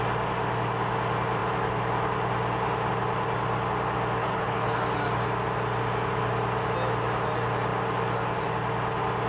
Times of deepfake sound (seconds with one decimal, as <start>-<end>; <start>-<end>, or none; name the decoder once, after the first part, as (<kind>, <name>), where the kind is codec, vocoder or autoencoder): 4.2-4.8 (codec, HILCodec)